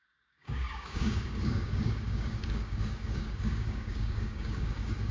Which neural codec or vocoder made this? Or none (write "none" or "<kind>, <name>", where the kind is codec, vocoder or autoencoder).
codec, DAC